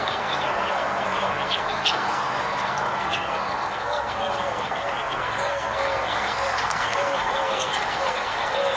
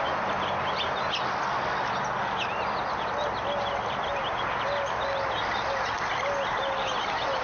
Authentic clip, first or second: second